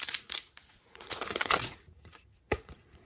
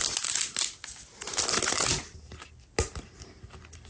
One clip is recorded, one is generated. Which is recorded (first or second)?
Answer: second